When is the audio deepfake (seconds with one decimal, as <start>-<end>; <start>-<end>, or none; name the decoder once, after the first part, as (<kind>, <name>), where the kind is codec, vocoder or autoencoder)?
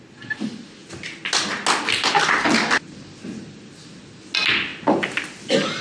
none